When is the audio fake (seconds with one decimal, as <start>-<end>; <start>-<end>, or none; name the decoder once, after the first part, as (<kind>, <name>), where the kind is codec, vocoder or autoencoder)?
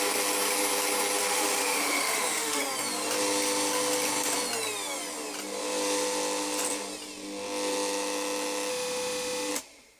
1.2-2.6 (autoencoder, DAC-VAE); 8.7-9.5